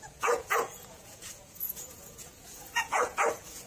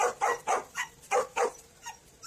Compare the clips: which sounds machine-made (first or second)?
first